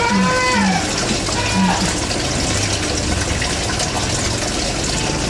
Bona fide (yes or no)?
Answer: yes